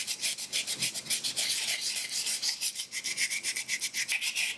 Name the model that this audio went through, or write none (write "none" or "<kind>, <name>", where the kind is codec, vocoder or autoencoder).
none